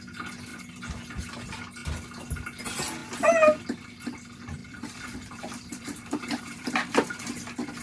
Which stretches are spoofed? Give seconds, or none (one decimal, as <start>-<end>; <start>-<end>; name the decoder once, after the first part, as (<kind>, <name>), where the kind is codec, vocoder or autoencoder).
0.5-1.0 (vocoder, BigVGAN v2); 4.6-6.9